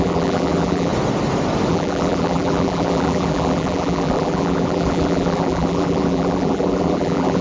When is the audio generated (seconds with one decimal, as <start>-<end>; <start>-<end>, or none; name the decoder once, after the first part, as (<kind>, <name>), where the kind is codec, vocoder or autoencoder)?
0.0-0.9 (vocoder, BigVGAN v2); 1.7-7.4